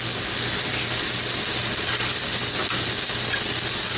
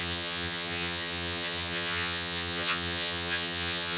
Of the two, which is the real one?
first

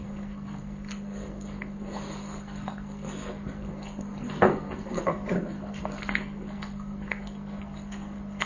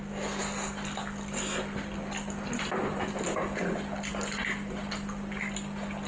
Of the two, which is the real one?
second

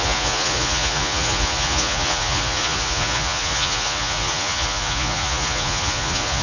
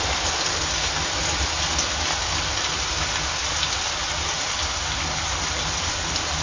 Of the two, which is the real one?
second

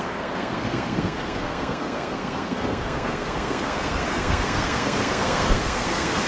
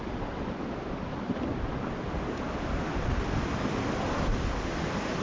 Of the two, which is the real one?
second